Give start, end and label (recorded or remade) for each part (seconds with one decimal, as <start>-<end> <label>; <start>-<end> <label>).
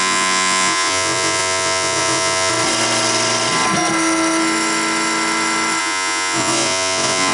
0.0-2.5 remade; 2.5-5.8 recorded; 5.8-7.3 remade